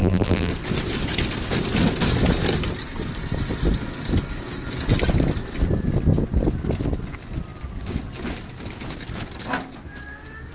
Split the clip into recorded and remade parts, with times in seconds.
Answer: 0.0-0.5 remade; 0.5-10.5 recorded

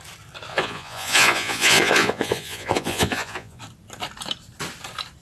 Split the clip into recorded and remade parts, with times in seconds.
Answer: 0.0-0.5 recorded; 0.5-3.6 remade; 3.6-5.2 recorded

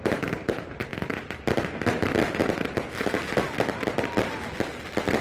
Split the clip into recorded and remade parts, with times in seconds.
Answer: 0.0-5.2 recorded

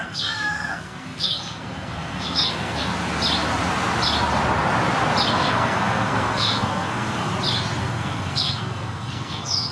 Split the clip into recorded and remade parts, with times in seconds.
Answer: 0.0-2.9 remade; 2.9-5.3 recorded; 5.3-7.3 remade; 7.3-7.8 recorded; 7.8-9.7 remade

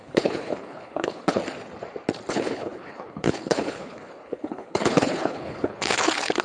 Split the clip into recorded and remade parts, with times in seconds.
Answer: 0.0-1.4 remade; 1.4-2.3 recorded; 2.3-6.4 remade

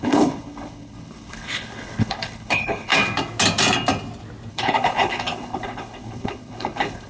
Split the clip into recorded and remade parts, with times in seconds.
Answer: 0.0-2.9 remade; 2.9-4.5 recorded; 4.5-7.1 remade

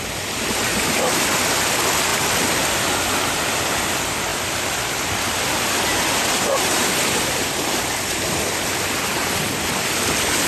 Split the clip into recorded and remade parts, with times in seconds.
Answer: 0.0-10.5 remade